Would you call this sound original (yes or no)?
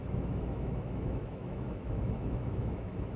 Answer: no